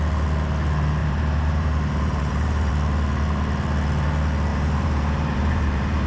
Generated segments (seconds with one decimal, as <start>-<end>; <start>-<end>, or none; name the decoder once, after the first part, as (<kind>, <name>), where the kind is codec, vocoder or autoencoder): 1.0-2.7 (vocoder, BigVGAN v2); 4.5-6.1